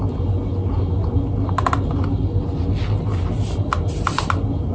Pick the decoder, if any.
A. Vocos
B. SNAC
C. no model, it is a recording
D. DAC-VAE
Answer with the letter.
C